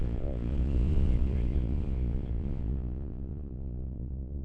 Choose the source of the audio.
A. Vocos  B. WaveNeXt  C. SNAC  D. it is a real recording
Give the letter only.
A